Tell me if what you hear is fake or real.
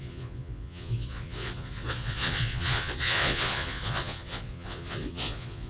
fake